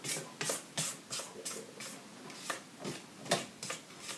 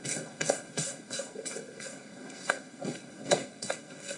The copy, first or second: second